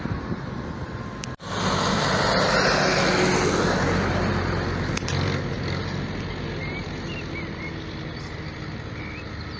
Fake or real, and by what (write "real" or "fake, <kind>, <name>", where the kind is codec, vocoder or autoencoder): real